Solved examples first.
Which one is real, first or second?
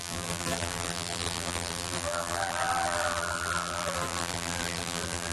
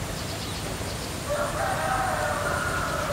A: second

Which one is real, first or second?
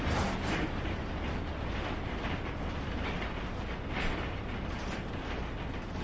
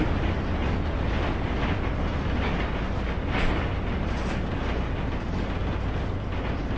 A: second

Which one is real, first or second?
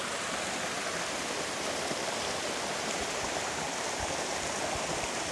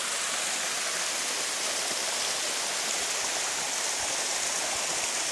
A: second